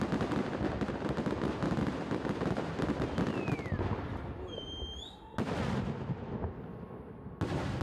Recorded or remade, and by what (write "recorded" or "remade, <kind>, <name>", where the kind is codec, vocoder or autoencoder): recorded